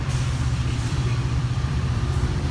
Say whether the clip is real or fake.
fake